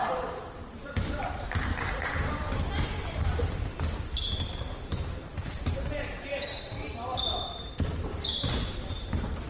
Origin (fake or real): fake